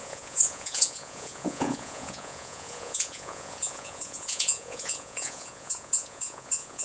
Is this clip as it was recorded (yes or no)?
no